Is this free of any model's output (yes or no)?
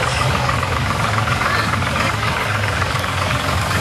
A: no